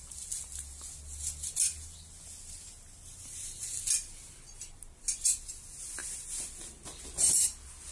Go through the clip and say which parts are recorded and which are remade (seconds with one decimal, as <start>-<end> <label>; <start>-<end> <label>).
0.0-7.9 recorded